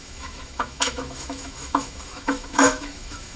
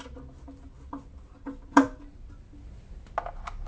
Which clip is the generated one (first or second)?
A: first